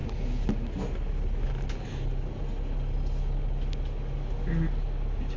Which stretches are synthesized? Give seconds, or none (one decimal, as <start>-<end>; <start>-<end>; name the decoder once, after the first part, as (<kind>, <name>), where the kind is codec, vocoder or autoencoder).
none